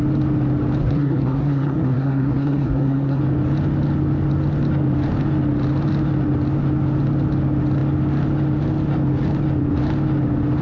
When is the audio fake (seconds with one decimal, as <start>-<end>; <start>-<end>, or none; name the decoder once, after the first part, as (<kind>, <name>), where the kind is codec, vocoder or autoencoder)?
0.8-3.2 (codec, SNAC)